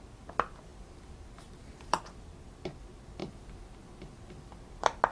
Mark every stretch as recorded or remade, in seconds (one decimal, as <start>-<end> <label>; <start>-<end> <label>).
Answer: 0.0-0.7 recorded; 0.7-2.0 remade; 2.0-3.2 recorded; 3.2-4.6 remade; 4.6-5.1 recorded